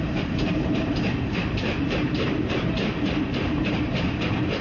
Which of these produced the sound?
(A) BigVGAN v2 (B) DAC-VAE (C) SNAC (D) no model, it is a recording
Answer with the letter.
A